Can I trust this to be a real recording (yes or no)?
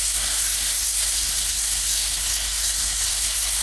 no